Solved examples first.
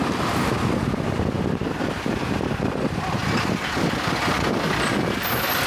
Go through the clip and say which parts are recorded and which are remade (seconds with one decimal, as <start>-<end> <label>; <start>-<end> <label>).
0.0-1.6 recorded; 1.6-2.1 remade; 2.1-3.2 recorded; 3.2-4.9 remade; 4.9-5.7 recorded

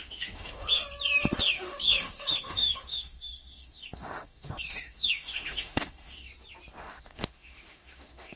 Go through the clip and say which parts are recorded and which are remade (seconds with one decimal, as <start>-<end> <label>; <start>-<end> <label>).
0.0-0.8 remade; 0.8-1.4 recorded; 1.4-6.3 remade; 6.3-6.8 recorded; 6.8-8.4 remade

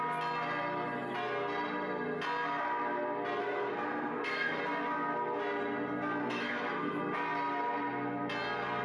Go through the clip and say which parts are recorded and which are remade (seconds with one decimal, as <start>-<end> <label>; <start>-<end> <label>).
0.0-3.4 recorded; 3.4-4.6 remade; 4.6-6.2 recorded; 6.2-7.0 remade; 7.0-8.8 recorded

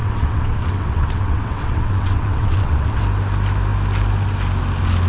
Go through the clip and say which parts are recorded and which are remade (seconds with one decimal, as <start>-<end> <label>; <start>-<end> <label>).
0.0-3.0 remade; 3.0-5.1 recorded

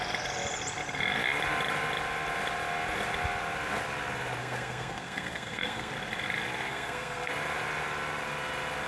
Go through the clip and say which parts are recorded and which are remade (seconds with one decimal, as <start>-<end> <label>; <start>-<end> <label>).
0.0-4.4 recorded; 4.4-5.9 remade; 5.9-6.7 recorded; 6.7-7.3 remade; 7.3-8.9 recorded